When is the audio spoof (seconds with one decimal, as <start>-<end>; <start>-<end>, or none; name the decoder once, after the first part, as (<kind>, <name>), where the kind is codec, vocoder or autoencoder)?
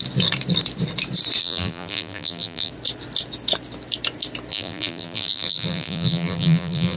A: 1.4-2.7 (vocoder, BigVGAN v2); 4.5-7.0